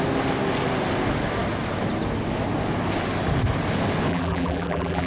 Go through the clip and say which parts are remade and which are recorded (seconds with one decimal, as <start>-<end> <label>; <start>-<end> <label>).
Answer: 0.0-4.1 recorded; 4.1-5.1 remade